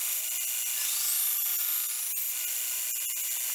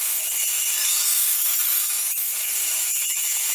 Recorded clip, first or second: first